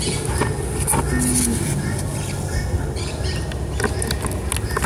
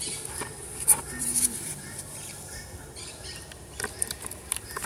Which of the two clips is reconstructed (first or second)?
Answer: second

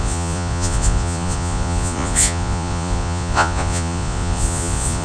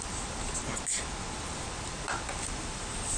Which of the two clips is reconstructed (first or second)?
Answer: first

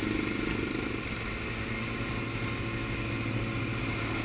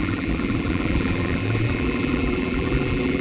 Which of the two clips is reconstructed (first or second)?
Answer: second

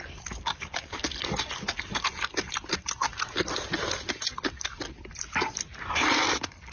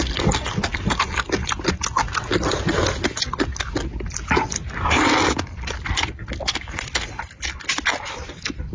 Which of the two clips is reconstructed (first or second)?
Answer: first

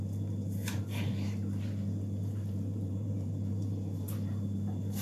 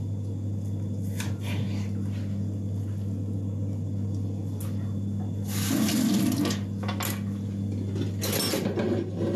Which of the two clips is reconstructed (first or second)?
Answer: first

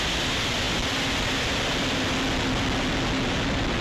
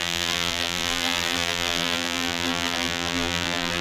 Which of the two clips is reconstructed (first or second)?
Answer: second